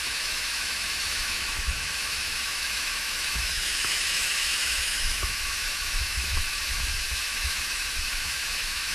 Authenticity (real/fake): fake